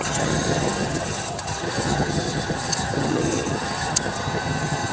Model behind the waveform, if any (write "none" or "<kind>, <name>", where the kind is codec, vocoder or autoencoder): vocoder, HiFi-GAN